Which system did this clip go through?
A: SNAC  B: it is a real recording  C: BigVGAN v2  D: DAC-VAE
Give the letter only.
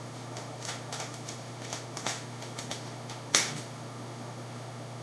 D